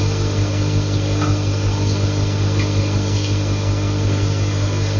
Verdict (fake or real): fake